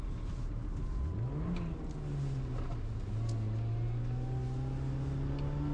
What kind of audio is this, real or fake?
real